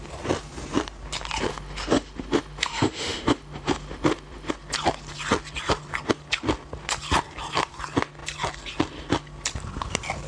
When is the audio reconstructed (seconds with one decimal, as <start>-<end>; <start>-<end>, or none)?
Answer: 1.5-4.5